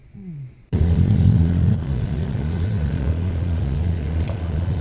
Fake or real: fake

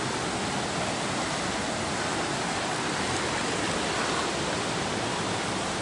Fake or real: real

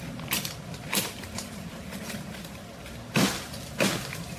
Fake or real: real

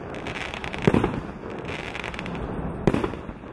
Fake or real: real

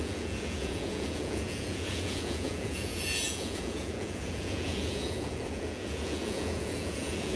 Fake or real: fake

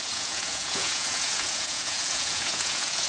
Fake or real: fake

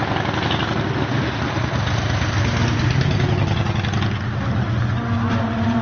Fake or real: real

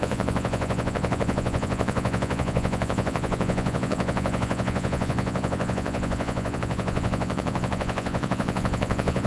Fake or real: fake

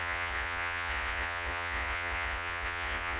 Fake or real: fake